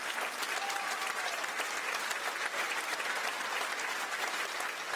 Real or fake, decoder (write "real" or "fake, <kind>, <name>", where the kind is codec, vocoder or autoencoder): real